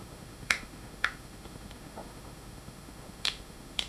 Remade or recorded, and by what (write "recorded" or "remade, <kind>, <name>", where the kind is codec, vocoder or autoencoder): remade, autoencoder, DAC-VAE